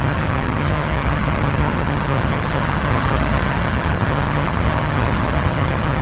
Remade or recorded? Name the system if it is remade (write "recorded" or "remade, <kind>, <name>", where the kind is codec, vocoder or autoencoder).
remade, vocoder, HiFi-GAN